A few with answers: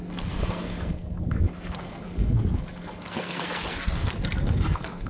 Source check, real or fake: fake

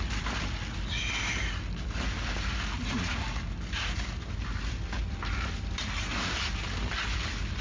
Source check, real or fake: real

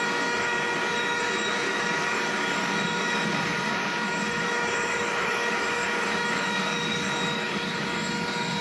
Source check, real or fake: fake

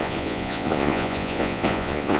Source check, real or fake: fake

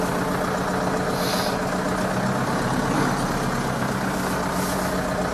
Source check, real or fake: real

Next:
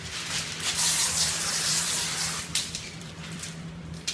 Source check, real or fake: fake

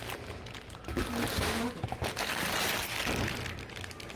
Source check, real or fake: real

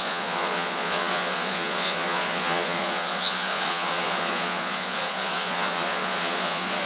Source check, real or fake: fake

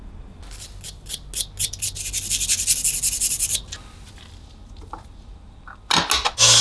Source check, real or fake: real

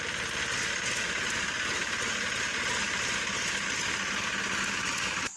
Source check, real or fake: real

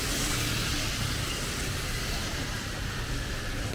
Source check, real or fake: real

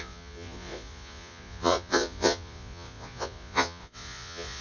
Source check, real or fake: fake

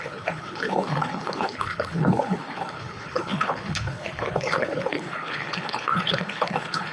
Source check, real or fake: fake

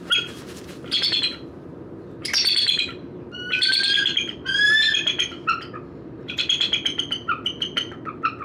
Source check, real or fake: real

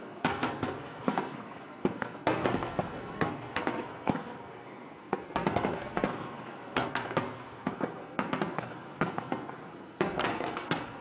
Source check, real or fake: fake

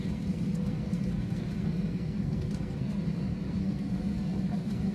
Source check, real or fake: fake